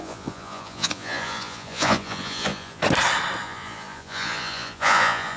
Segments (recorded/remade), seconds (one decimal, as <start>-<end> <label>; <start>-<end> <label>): 0.0-2.8 remade; 2.8-3.4 recorded; 3.4-5.4 remade